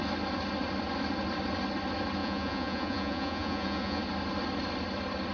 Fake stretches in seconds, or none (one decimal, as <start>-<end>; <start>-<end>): 2.2-4.0